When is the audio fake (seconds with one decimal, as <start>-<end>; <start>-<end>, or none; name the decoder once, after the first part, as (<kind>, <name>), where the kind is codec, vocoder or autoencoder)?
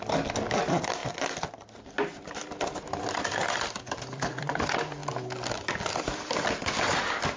0.0-5.0 (vocoder, BigVGAN v2); 6.0-7.4